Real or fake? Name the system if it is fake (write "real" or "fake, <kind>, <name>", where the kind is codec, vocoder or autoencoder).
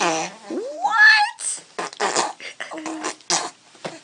real